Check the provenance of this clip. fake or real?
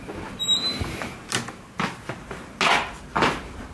real